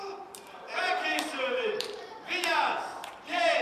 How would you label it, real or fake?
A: fake